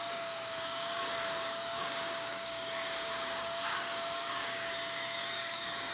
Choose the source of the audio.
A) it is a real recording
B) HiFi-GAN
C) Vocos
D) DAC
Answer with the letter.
D